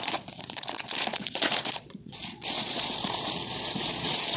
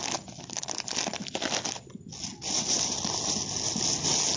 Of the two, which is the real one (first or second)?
second